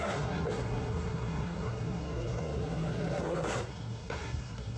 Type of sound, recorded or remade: remade